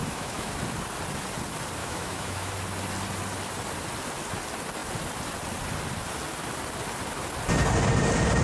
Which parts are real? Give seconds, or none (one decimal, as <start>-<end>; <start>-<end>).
0.5-1.8; 2.5-8.4